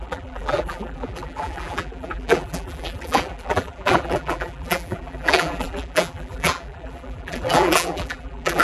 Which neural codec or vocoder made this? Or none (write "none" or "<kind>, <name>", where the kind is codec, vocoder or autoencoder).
vocoder, BigVGAN v2